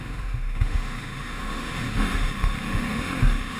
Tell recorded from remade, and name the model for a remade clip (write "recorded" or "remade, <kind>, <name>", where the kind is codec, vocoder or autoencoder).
remade, autoencoder, DAC-VAE